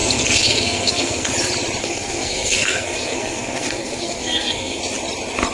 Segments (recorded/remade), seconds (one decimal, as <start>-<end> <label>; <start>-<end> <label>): 0.0-1.3 remade; 1.3-1.8 recorded; 1.8-4.8 remade; 4.8-5.5 recorded